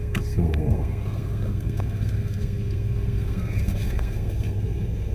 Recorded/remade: remade